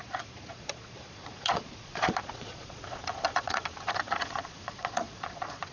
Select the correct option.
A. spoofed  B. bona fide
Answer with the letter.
A